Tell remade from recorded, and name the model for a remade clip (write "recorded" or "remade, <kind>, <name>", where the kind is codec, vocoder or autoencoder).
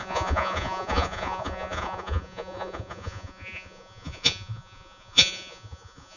remade, vocoder, Vocos